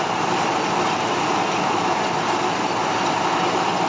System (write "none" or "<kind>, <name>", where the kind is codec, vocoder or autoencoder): none